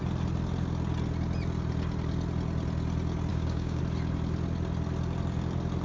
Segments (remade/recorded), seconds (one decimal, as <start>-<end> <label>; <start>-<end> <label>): 0.0-3.3 recorded; 3.3-3.8 remade; 3.8-5.8 recorded